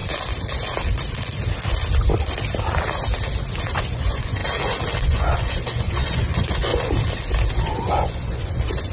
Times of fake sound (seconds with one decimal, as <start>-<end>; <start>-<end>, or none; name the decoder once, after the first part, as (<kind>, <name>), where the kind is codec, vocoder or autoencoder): 3.6-4.4 (vocoder, Vocos); 5.0-6.7; 7.5-8.9